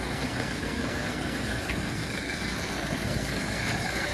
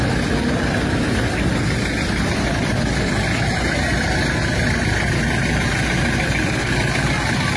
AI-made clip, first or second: first